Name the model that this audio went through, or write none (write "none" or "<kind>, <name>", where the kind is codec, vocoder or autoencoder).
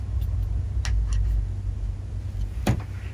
none